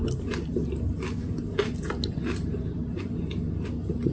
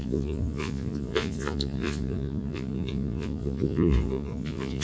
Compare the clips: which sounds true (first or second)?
first